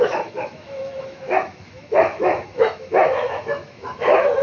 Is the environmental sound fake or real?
fake